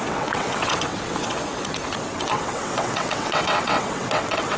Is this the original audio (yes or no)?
no